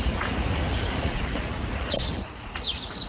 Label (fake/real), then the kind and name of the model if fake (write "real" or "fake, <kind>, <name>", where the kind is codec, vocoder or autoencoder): fake, vocoder, Vocos